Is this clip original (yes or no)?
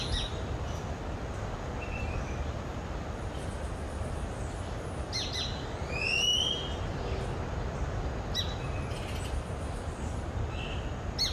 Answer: yes